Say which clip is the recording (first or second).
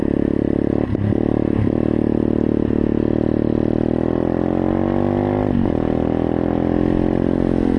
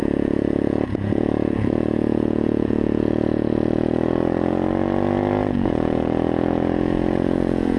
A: first